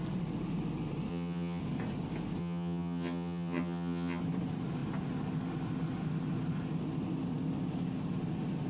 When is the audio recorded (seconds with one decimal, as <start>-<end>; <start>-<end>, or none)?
0.0-1.1; 1.6-2.4; 4.2-8.7